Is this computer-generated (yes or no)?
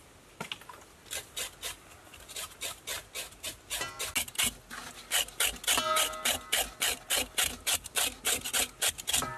no